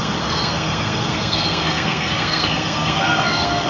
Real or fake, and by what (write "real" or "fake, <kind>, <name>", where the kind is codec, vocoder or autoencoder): fake, codec, SNAC